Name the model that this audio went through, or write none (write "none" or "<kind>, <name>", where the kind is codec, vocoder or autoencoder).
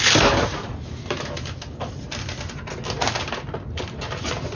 none